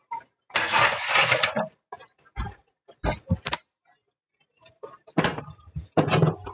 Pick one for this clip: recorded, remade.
recorded